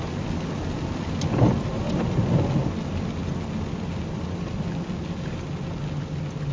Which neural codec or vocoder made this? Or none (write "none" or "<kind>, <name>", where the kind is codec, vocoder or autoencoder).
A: none